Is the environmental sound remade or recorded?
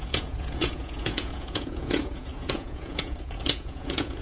remade